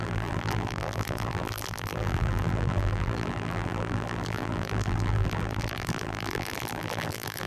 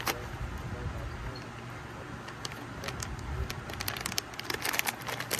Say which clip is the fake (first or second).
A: first